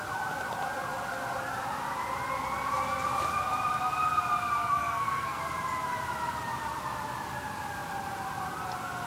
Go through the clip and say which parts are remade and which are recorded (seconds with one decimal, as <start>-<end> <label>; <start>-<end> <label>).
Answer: 0.0-4.6 recorded; 4.6-5.4 remade; 5.4-9.1 recorded